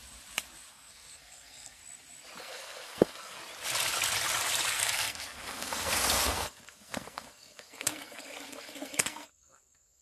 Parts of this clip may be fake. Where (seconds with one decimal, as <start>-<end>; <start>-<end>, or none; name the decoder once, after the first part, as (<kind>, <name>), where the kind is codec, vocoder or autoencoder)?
0.7-1.8 (codec, SNAC); 2.4-3.4; 4.7-10.0